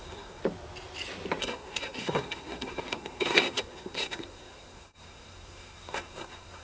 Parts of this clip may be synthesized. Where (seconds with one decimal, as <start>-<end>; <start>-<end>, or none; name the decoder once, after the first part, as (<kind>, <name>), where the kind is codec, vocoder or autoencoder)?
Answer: 0.0-0.4 (codec, SNAC); 1.4-6.6